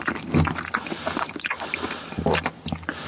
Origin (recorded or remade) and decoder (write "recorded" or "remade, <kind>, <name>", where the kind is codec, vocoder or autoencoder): recorded